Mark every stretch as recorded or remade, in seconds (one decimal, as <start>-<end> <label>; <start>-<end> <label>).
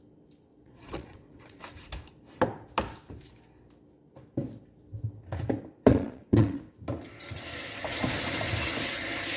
0.0-0.5 recorded; 0.5-1.6 remade; 1.6-5.9 recorded; 5.9-6.6 remade; 6.6-9.4 recorded